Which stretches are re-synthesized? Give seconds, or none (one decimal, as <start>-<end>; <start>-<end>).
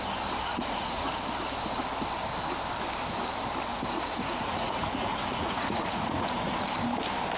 0.5-1.1; 3.7-6.6